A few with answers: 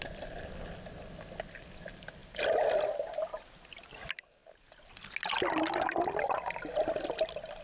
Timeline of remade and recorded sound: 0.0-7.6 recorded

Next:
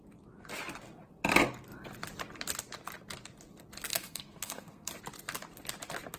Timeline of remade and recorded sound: 0.0-3.9 recorded; 3.9-4.9 remade; 4.9-6.2 recorded

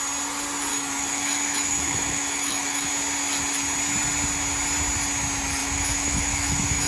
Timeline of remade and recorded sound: 0.0-0.7 recorded; 0.7-2.9 remade; 2.9-5.6 recorded; 5.6-6.9 remade

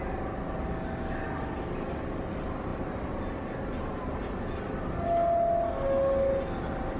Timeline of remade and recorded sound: 0.0-7.0 recorded

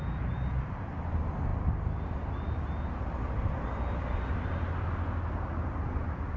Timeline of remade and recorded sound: 0.0-6.4 recorded